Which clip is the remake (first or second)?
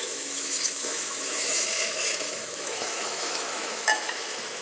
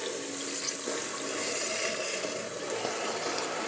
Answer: first